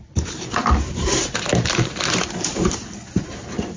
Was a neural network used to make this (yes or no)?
yes